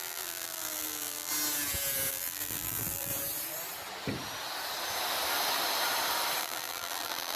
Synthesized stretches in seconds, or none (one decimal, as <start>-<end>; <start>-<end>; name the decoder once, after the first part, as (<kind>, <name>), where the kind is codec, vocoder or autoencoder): 0.0-1.3 (vocoder, BigVGAN v2); 2.1-3.1; 6.4-7.4